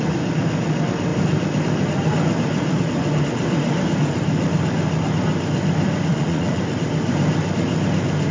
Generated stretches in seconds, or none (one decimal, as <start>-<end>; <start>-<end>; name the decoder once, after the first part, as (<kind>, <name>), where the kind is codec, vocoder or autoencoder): 6.1-6.6 (vocoder, Vocos)